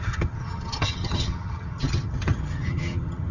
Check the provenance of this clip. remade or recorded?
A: remade